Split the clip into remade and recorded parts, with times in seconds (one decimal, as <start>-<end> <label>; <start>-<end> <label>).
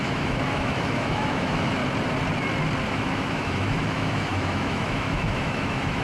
0.0-1.8 remade; 1.8-2.9 recorded; 2.9-6.0 remade